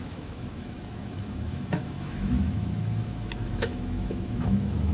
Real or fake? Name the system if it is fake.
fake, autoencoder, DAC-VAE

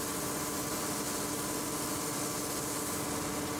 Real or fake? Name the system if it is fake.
real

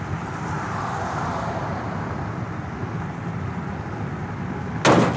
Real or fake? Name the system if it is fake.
real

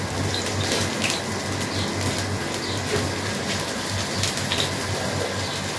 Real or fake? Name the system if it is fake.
real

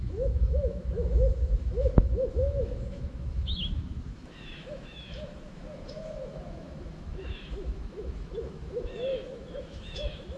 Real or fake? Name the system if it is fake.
fake, autoencoder, DAC-VAE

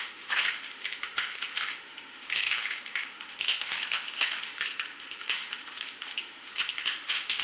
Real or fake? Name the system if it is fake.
fake, autoencoder, DAC-VAE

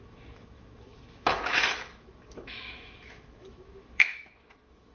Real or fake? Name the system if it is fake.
fake, autoencoder, DAC-VAE